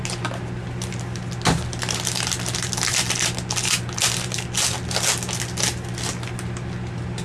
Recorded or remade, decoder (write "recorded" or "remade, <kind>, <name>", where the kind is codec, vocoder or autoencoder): recorded